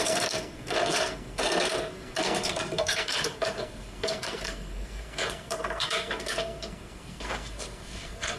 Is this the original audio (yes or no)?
no